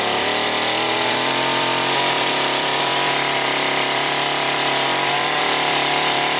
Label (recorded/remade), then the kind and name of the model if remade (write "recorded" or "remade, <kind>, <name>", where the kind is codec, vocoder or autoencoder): remade, vocoder, BigVGAN v2